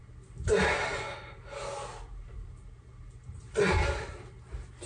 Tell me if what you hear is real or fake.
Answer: real